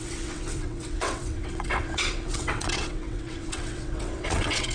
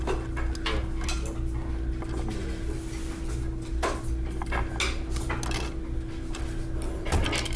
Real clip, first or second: second